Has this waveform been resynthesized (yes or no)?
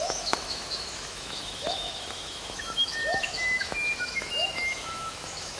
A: yes